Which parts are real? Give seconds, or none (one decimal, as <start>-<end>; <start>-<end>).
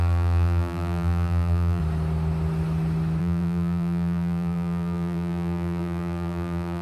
1.8-3.2